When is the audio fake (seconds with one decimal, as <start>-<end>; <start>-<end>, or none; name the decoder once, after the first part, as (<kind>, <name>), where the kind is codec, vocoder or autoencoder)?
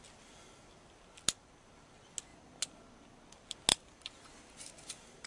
3.7-5.3 (vocoder, BigVGAN v2)